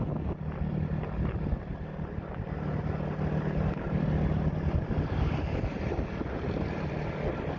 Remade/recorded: recorded